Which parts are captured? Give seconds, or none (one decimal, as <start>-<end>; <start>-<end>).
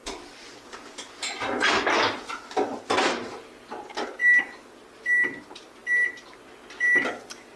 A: 0.0-7.6